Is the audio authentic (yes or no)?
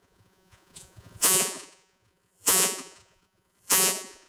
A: no